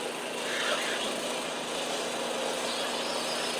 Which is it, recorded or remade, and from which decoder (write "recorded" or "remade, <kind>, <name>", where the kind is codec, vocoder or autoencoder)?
recorded